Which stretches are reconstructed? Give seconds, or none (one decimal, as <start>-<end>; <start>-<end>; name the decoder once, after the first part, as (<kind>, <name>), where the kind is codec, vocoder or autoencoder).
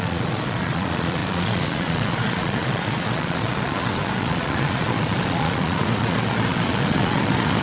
0.0-7.6 (vocoder, Vocos)